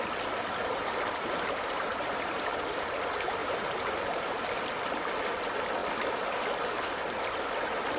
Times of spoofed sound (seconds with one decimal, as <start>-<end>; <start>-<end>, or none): 0.6-3.0; 3.4-4.5